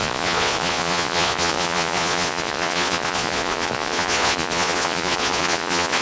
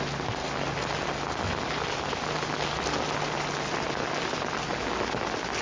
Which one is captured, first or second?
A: second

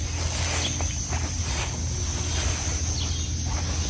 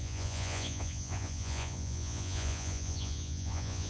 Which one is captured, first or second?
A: first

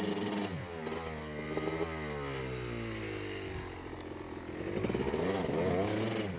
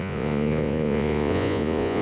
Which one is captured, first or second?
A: first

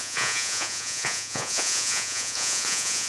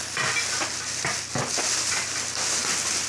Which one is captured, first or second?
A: second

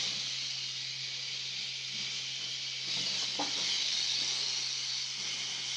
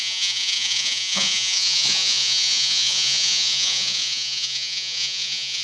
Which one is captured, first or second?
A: first